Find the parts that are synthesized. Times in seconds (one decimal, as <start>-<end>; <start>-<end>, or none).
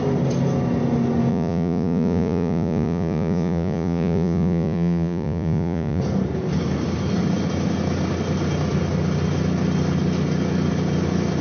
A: 1.3-6.0